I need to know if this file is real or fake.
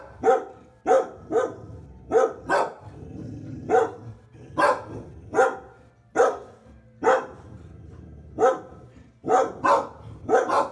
real